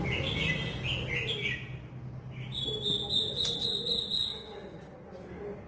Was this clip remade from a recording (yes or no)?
no